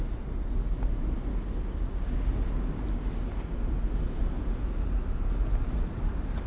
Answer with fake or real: real